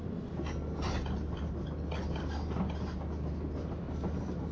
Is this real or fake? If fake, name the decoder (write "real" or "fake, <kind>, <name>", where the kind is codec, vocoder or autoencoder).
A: real